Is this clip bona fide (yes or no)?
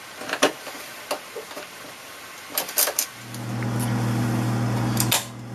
yes